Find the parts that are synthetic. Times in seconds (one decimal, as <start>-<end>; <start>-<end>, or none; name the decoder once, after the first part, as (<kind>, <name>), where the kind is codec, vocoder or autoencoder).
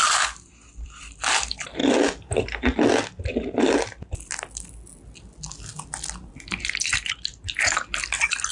0.0-1.8 (vocoder, BigVGAN v2); 6.6-7.3